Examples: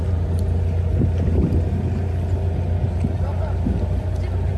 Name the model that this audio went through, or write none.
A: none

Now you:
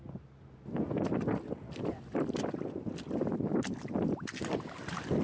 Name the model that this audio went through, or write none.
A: none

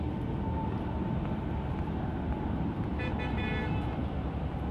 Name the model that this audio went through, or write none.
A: vocoder, BigVGAN v2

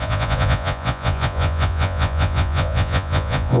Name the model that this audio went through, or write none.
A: vocoder, Vocos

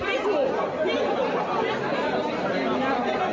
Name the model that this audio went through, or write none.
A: none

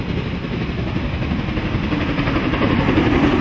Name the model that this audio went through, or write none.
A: none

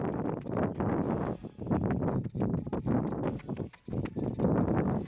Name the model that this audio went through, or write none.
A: none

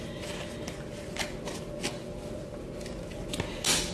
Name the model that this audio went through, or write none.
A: none